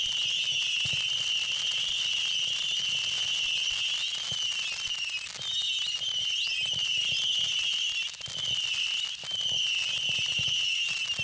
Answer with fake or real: real